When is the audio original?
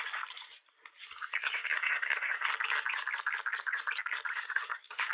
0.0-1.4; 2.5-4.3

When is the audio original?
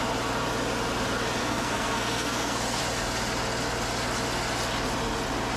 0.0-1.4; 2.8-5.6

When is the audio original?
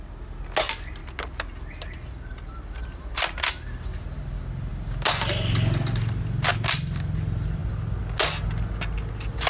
0.0-9.5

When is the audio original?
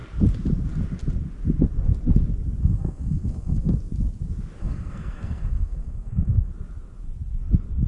0.0-2.6; 3.7-4.6; 6.5-7.9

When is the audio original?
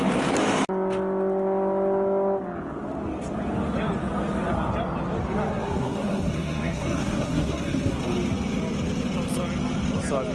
0.0-5.5; 8.0-10.3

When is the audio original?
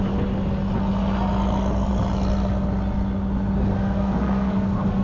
0.0-3.7